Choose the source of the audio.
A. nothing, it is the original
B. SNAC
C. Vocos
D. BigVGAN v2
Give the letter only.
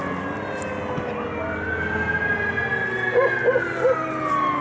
A